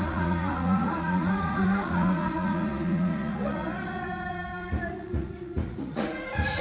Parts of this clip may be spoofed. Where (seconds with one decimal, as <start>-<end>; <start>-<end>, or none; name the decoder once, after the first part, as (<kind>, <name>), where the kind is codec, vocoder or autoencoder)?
0.0-6.6 (vocoder, Vocos)

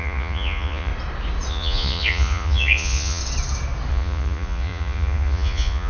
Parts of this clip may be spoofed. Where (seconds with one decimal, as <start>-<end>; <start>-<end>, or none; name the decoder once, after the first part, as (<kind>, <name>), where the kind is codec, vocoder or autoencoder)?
0.0-0.9 (vocoder, Vocos); 1.5-3.2; 3.9-5.9